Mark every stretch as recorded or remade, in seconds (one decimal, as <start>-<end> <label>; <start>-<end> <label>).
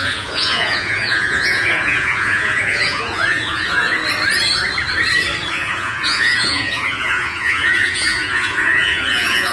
0.0-4.0 remade; 4.0-5.5 recorded; 5.5-9.5 remade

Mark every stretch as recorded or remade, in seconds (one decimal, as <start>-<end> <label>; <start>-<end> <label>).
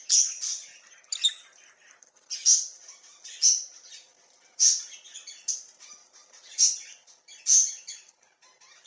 0.0-8.9 recorded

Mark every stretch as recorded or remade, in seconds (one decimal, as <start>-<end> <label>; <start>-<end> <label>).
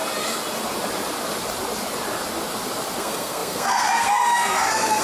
0.0-3.0 recorded; 3.0-5.0 remade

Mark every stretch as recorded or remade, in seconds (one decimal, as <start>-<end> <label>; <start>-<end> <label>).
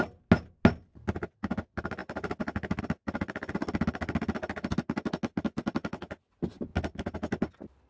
0.0-7.9 recorded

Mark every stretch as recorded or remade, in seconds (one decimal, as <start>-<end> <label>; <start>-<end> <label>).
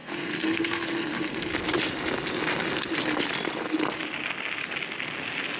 0.0-1.5 remade; 1.5-5.6 recorded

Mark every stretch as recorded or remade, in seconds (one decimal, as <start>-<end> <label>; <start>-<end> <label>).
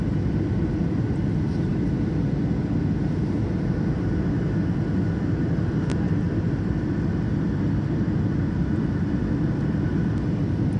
0.0-10.8 recorded